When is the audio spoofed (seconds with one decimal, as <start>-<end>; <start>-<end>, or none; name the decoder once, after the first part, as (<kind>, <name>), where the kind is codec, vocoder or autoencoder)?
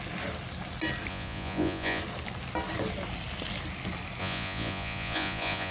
1.1-2.0 (vocoder, Vocos); 4.2-5.7